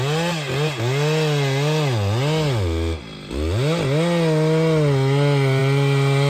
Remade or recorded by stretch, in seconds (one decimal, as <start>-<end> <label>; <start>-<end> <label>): 0.0-6.3 recorded